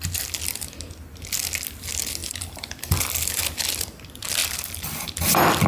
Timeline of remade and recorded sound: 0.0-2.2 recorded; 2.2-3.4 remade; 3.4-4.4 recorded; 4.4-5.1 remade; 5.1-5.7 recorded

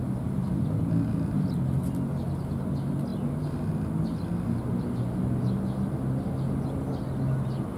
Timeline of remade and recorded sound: 0.0-7.8 recorded

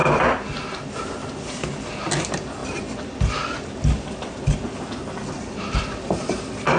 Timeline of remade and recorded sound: 0.0-6.8 recorded

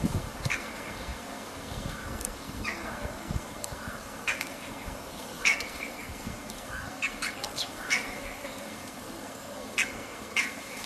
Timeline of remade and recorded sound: 0.0-10.9 remade